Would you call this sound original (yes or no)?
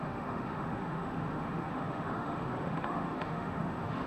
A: no